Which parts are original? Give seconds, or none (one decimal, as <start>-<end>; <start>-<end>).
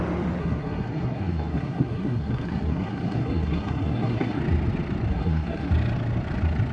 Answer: 0.0-0.4; 4.4-5.1; 5.7-6.7